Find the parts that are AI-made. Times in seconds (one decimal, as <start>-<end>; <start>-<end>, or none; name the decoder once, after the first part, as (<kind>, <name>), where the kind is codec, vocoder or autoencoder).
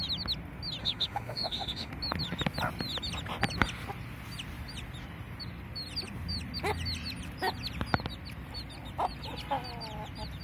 0.8-1.9 (autoencoder, DAC-VAE)